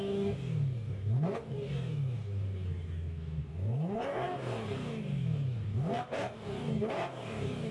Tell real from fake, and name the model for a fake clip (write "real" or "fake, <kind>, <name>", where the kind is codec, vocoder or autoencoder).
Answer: fake, codec, DAC